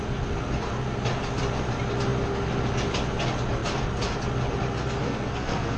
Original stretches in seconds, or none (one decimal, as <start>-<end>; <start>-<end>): 0.0-5.0